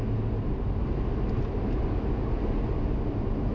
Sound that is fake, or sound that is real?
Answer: real